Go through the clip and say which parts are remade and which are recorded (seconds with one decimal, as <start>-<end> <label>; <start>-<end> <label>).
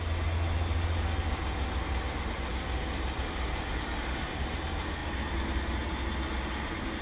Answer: 0.0-7.0 recorded